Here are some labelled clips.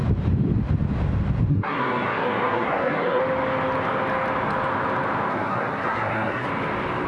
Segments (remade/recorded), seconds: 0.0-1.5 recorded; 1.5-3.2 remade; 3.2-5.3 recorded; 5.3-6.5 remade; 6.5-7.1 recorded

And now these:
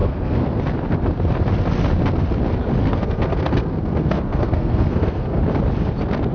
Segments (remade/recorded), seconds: 0.0-0.6 remade; 0.6-2.8 recorded; 2.8-5.4 remade; 5.4-6.3 recorded

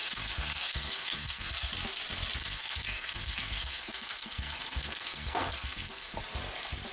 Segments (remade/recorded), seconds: 0.0-1.7 remade; 1.7-2.4 recorded; 2.4-6.2 remade; 6.2-6.9 recorded

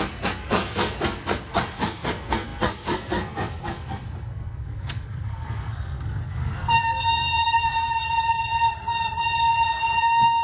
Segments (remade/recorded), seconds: 0.0-8.0 remade; 8.0-10.0 recorded; 10.0-10.4 remade

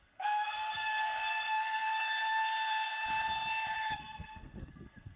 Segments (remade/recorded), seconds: 0.0-1.9 remade; 1.9-4.0 recorded; 4.0-5.2 remade

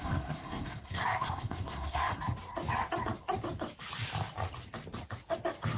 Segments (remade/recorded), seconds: 0.0-2.2 remade; 2.2-5.8 recorded